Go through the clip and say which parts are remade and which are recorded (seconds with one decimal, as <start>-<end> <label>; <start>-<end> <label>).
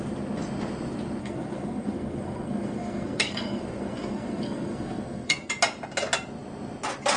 0.0-1.2 recorded; 1.2-5.5 remade; 5.5-7.2 recorded